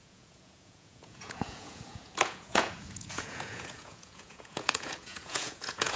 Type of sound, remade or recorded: remade